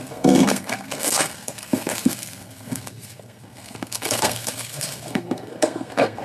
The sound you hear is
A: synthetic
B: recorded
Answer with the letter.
A